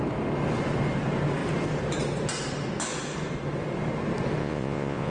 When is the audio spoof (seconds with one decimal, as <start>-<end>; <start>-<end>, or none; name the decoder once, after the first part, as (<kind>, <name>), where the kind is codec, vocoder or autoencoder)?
4.4-5.1 (vocoder, Vocos)